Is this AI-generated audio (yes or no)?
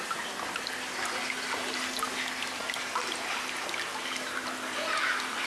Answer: no